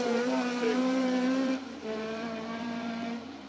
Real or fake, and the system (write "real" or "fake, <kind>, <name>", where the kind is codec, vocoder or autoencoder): fake, vocoder, BigVGAN v2